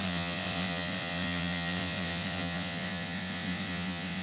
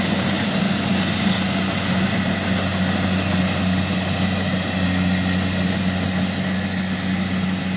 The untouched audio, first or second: second